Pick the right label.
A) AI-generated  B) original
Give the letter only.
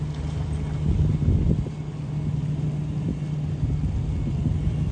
B